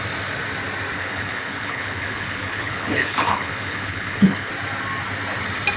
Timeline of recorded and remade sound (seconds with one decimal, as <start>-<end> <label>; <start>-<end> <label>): 0.0-1.0 recorded; 1.0-4.5 remade; 4.5-5.8 recorded